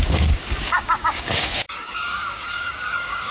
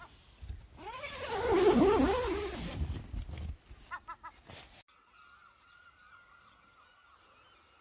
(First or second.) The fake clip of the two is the first